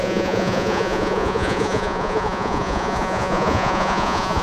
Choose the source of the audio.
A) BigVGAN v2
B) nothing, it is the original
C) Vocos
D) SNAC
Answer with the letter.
C